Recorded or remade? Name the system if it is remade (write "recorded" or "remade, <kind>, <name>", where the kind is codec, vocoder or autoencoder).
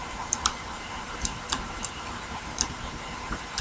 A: remade, vocoder, BigVGAN v2